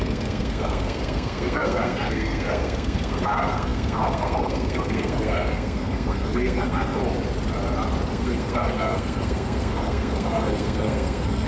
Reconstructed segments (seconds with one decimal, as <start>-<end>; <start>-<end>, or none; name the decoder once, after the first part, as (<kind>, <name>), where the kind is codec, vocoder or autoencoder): 0.0-7.0 (codec, SNAC); 8.1-11.5